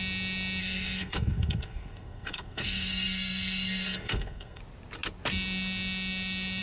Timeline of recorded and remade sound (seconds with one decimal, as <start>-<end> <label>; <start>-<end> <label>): 0.0-0.6 recorded; 0.6-4.6 remade; 4.6-6.6 recorded